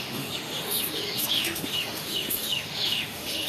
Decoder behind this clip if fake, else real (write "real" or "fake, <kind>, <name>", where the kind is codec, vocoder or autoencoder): fake, autoencoder, DAC-VAE